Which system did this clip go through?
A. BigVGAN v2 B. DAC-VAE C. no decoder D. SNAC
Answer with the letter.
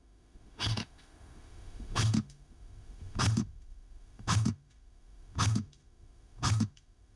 B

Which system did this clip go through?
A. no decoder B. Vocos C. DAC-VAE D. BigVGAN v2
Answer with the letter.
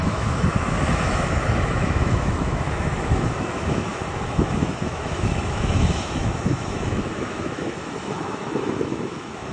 C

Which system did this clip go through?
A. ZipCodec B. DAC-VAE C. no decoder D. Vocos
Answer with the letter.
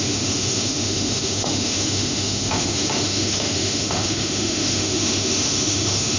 B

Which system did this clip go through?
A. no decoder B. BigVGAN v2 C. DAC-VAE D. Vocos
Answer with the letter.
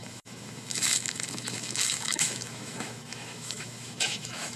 C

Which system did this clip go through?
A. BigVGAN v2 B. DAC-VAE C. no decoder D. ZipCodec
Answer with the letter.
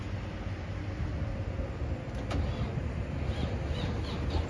C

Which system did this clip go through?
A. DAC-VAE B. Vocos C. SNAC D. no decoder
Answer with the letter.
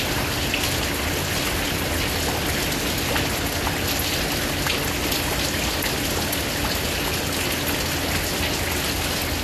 D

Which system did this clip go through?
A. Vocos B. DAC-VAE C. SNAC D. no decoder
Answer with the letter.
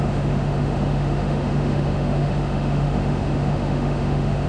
B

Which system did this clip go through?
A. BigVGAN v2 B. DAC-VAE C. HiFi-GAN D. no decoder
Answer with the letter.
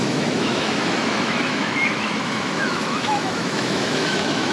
B